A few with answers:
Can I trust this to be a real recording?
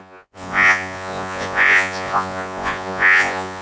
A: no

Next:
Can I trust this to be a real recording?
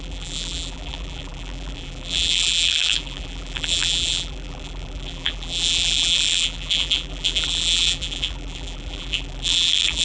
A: no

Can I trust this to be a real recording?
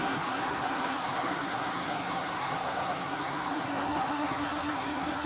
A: no